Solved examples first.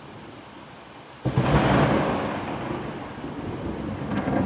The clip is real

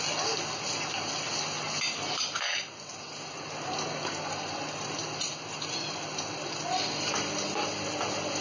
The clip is real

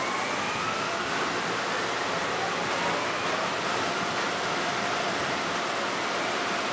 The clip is real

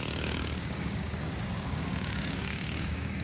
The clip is fake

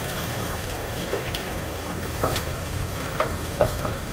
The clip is fake